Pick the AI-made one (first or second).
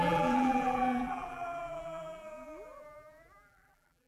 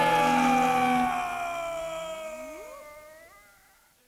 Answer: first